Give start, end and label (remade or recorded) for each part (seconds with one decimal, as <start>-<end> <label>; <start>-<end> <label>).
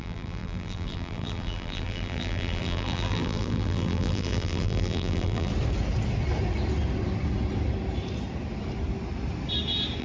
0.0-5.5 remade; 5.5-10.0 recorded